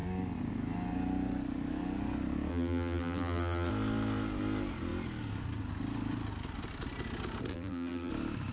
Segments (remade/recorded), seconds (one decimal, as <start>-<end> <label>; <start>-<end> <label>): 0.0-2.5 recorded; 2.5-3.7 remade; 3.7-7.5 recorded; 7.5-8.1 remade; 8.1-8.5 recorded